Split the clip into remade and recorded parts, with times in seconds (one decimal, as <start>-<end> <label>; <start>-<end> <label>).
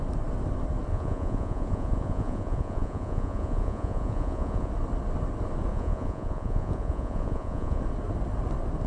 0.0-0.9 recorded; 0.9-4.7 remade; 4.7-5.7 recorded; 5.7-7.8 remade; 7.8-8.9 recorded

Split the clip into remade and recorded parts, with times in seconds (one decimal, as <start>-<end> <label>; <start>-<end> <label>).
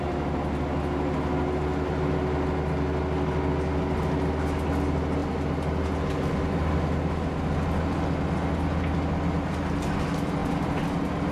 0.0-11.3 recorded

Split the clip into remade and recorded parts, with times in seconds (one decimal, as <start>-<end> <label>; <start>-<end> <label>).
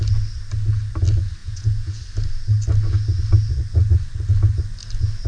0.0-1.4 recorded; 1.4-2.0 remade; 2.0-5.3 recorded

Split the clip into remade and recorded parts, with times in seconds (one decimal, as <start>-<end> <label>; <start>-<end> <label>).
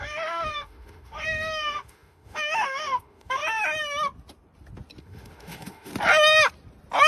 0.0-3.4 remade; 3.4-5.0 recorded; 5.0-5.9 remade; 5.9-7.1 recorded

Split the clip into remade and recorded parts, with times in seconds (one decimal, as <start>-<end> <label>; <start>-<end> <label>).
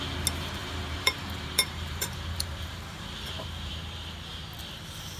0.0-0.6 recorded; 0.6-3.7 remade; 3.7-5.2 recorded